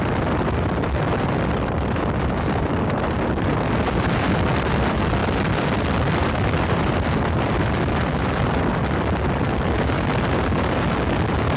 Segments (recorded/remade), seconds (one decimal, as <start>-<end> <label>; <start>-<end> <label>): 0.0-8.8 remade; 8.8-11.6 recorded